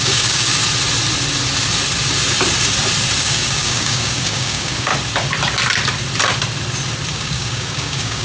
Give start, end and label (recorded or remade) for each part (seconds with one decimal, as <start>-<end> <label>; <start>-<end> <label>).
0.0-0.6 remade; 0.6-3.2 recorded; 3.2-4.9 remade; 4.9-7.1 recorded; 7.1-8.2 remade